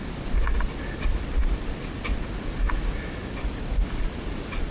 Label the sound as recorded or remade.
recorded